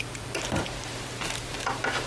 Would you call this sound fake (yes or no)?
yes